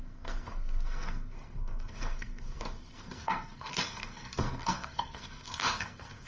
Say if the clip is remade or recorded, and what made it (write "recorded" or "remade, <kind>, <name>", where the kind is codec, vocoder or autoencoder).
remade, codec, SNAC